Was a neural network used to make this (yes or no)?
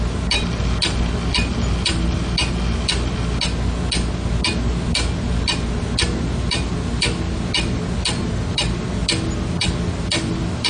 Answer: no